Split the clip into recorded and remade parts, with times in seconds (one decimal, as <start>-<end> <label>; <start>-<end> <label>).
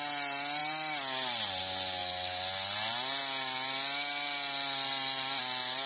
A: 0.0-5.9 recorded